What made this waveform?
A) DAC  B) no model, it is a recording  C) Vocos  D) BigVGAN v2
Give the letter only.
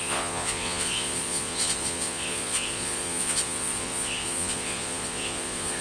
C